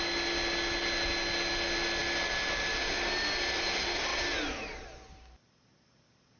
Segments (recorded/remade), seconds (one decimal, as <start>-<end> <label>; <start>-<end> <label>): 0.0-6.4 recorded